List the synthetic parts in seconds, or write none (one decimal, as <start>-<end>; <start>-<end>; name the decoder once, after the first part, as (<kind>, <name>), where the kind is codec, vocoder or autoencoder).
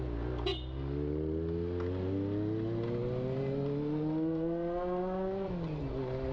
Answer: none